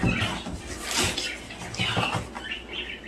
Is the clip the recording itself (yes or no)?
yes